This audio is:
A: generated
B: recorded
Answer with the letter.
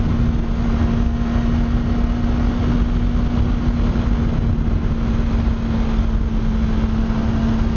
B